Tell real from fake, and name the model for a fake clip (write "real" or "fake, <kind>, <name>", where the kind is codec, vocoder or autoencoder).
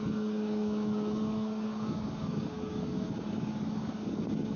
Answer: fake, codec, DAC